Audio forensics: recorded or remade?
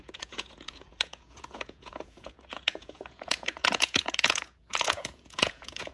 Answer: remade